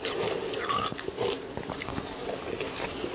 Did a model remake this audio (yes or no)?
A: no